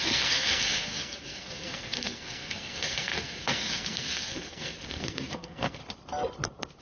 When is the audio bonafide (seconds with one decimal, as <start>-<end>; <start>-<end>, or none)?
5.8-6.8